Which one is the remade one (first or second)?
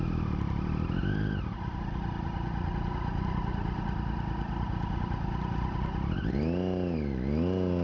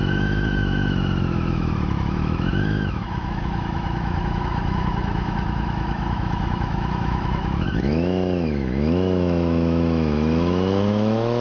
second